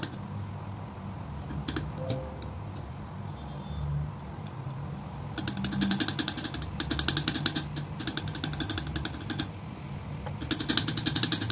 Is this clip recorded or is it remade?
recorded